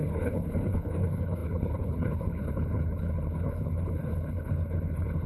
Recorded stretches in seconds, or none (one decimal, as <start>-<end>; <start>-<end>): none